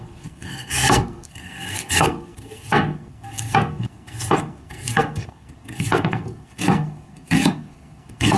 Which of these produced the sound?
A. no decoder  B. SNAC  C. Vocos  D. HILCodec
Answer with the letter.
B